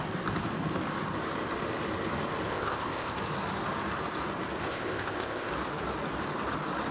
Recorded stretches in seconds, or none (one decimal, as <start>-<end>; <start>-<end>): 0.0-2.5; 3.2-4.6; 5.5-6.9

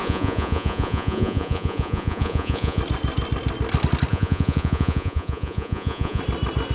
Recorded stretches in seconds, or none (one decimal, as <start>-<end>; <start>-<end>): 2.8-4.1; 6.2-6.7